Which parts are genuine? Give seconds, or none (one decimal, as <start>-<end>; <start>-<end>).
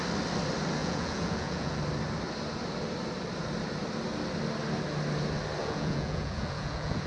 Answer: 0.0-0.8; 1.8-5.6